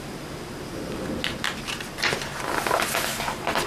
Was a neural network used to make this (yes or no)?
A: no